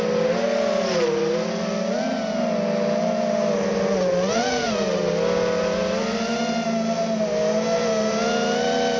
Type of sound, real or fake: real